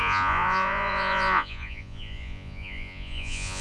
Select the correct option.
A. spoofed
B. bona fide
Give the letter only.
A